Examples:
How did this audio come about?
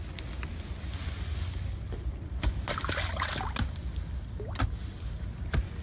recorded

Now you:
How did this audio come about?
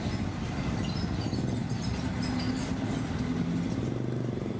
recorded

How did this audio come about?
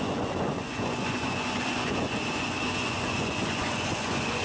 remade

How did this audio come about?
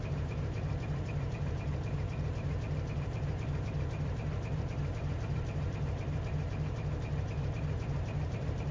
remade